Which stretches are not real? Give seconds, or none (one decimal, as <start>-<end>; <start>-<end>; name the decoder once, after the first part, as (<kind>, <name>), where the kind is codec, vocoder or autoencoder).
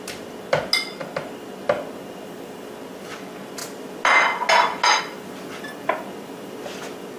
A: none